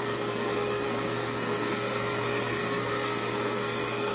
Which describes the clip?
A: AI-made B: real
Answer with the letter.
A